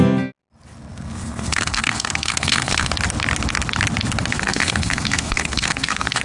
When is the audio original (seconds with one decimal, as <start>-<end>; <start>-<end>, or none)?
0.0-0.9; 2.9-4.3